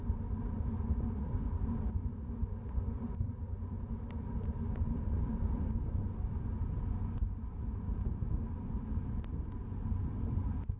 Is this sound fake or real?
real